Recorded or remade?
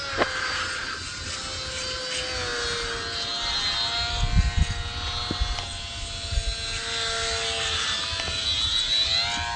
recorded